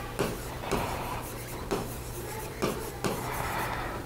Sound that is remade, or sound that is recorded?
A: remade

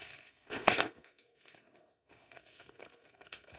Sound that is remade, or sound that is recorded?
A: remade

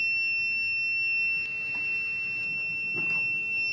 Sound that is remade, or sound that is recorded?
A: recorded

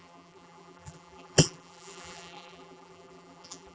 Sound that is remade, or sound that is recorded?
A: remade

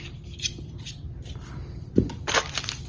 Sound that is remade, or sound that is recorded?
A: recorded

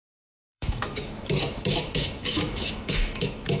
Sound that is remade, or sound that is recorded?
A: remade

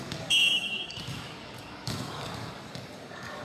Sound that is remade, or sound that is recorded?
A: remade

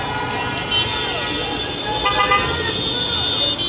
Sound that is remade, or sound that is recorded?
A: recorded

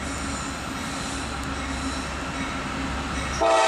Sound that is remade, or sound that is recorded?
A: recorded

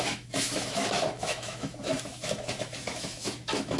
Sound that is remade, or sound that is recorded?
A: remade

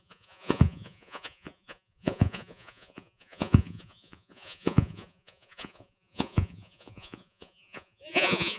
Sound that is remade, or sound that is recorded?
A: remade